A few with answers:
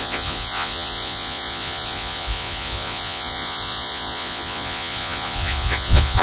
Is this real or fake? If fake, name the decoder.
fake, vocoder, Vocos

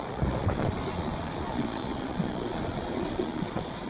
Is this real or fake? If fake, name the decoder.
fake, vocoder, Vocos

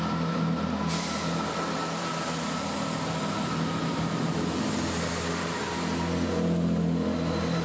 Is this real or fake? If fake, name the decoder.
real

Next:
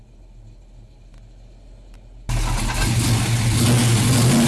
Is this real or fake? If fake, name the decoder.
real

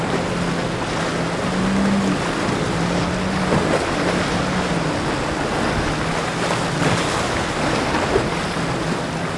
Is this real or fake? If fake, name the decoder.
real